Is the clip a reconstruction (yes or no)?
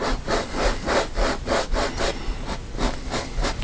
no